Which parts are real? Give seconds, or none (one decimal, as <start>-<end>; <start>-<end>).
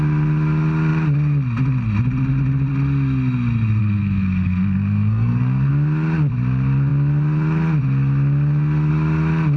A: 0.0-3.8; 5.7-9.6